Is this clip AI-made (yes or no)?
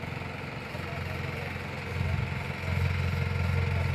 no